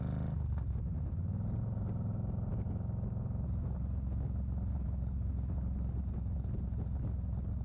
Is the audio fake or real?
real